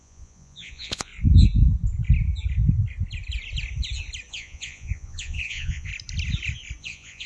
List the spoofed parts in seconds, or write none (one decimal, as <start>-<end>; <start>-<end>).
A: 0.0-1.1; 4.3-5.9; 6.8-7.3